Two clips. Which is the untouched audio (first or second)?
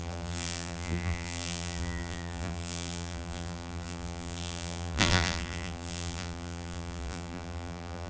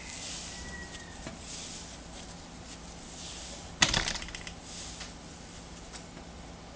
second